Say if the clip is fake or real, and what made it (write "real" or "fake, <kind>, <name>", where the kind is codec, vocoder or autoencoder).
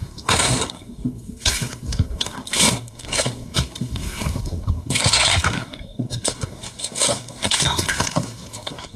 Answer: fake, codec, SNAC